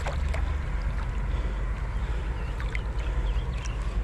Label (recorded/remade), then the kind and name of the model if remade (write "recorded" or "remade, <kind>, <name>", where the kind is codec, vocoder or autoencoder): recorded